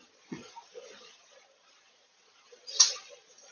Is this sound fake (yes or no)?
yes